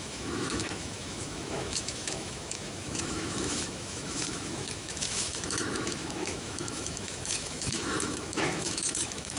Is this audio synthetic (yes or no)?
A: yes